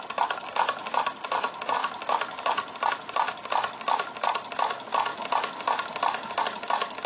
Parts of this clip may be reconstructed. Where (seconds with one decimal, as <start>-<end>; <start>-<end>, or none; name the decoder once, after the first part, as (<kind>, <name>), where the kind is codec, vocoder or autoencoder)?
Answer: none